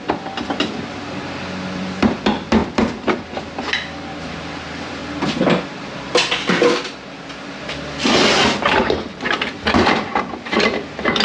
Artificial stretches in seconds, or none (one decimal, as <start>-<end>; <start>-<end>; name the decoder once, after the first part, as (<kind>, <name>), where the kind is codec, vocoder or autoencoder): 0.0-5.0 (vocoder, BigVGAN v2); 9.7-11.2